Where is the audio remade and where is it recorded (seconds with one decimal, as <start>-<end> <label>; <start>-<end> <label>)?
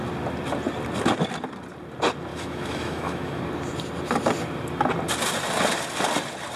0.0-2.3 recorded; 2.3-3.4 remade; 3.4-6.6 recorded